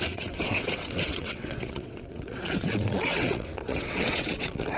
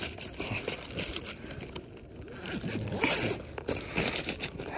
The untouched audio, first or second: second